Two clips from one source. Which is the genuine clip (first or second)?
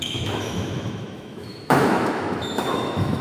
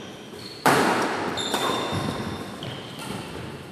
second